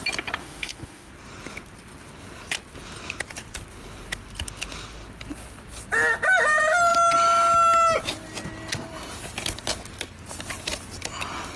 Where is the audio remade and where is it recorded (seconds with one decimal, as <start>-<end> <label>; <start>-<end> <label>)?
0.0-0.4 recorded; 0.4-1.1 remade; 1.1-11.6 recorded